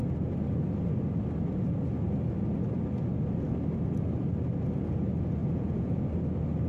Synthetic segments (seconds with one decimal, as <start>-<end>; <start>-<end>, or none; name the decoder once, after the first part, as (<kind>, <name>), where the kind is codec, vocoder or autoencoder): 5.4-6.0 (vocoder, Vocos)